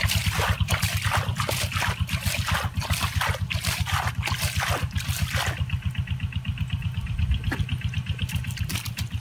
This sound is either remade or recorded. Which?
recorded